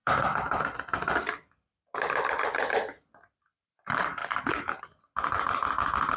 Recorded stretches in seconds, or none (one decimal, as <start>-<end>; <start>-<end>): 3.7-6.2